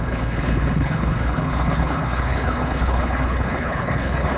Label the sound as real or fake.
fake